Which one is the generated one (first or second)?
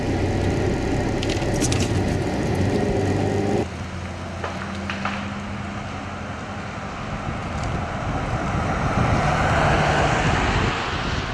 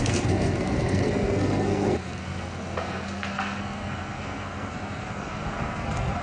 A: second